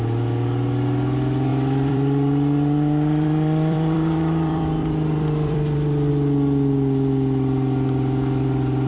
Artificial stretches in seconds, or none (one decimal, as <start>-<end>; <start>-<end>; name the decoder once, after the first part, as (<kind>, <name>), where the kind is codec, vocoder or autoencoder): 1.5-6.1 (vocoder, BigVGAN v2)